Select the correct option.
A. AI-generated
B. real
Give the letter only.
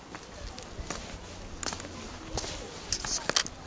B